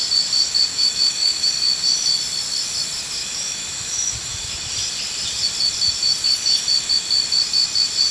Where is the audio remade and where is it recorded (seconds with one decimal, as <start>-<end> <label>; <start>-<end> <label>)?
0.0-0.7 recorded; 0.7-1.5 remade; 1.5-3.2 recorded; 3.2-4.7 remade; 4.7-8.1 recorded